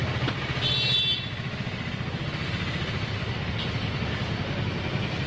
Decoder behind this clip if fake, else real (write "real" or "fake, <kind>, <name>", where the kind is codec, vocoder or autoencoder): real